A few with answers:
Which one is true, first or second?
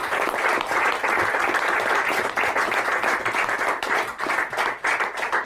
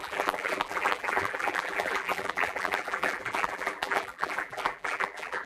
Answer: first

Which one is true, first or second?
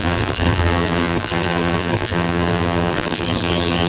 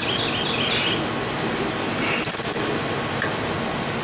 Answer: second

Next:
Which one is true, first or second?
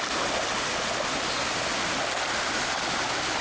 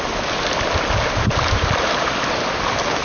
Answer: first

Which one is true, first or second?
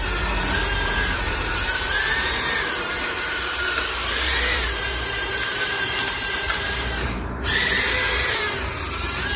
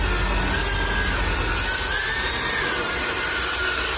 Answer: second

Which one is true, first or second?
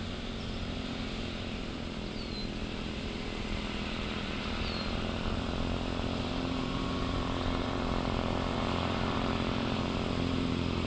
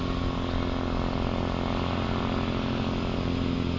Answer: second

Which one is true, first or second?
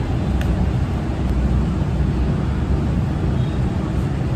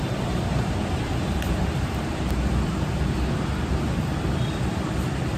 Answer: first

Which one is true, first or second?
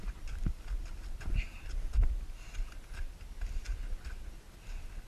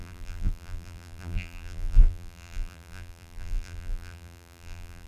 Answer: first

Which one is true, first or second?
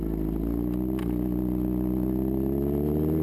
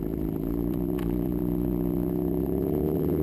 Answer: first